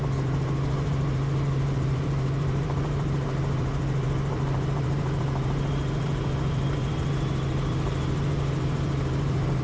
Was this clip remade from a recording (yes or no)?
yes